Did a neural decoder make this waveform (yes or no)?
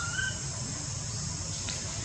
no